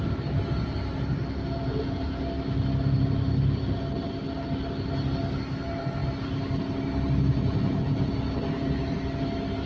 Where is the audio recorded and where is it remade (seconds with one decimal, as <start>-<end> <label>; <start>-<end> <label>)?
0.0-1.6 recorded; 1.6-2.2 remade; 2.2-7.3 recorded; 7.3-8.1 remade; 8.1-9.7 recorded